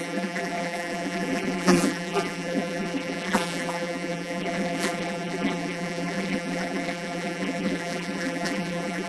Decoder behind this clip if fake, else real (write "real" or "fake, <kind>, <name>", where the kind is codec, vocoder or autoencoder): fake, vocoder, BigVGAN v2